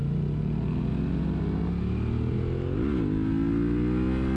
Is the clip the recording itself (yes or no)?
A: yes